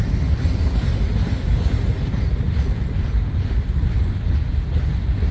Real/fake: real